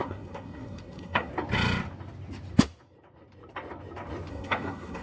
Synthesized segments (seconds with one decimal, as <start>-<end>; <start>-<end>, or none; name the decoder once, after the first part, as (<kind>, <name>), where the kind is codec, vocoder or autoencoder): 0.0-1.3 (codec, SNAC); 4.3-5.0

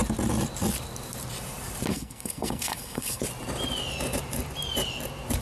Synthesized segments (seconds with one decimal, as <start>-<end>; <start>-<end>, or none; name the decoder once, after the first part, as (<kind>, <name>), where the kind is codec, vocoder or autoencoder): 1.9-3.2 (codec, SNAC)

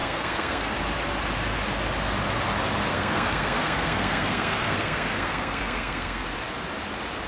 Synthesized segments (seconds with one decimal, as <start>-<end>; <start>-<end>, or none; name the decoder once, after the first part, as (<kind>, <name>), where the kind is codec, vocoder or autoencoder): 0.0-0.8 (codec, SNAC); 2.9-6.2

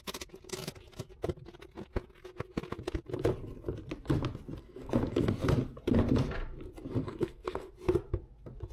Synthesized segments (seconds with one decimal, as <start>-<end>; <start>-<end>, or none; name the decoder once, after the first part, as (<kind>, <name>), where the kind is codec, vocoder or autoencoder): 4.6-5.3 (codec, SNAC); 7.0-7.7

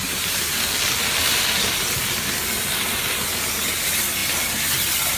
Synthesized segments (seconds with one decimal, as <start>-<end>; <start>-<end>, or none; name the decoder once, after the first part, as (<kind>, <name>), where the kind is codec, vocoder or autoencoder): none

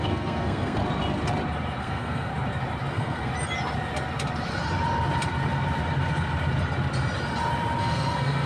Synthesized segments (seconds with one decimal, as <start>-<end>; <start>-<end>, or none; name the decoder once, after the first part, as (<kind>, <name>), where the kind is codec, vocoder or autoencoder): 0.0-0.8 (codec, SNAC); 1.8-2.3; 2.9-3.3; 7.8-8.5

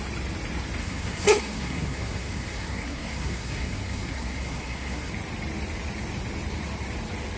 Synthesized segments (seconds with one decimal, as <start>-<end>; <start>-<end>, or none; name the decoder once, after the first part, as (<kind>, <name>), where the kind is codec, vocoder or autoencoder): 0.8-5.1 (codec, SNAC)